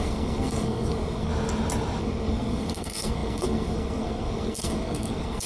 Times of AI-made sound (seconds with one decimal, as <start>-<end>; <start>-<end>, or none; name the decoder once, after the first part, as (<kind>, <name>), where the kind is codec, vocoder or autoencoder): 0.0-1.3 (codec, SNAC); 2.0-5.5